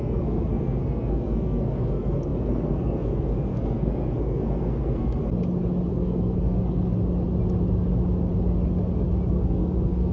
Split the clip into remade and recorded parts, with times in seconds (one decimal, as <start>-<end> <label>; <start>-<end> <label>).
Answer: 0.0-5.2 remade; 5.2-5.9 recorded; 5.9-6.9 remade; 6.9-9.3 recorded; 9.3-10.1 remade

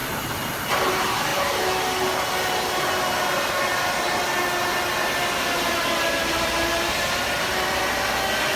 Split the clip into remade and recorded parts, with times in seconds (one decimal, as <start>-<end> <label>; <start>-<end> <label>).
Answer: 0.0-1.3 recorded; 1.3-1.8 remade; 1.8-6.2 recorded; 6.2-7.8 remade; 7.8-8.6 recorded

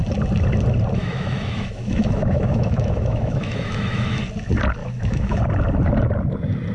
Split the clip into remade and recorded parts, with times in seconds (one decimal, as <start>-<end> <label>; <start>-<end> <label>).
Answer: 0.0-1.0 recorded; 1.0-4.2 remade; 4.2-4.8 recorded; 4.8-5.4 remade; 5.4-6.7 recorded

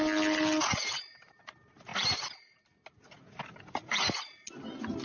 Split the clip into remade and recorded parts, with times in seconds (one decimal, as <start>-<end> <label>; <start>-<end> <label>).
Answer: 0.0-5.0 recorded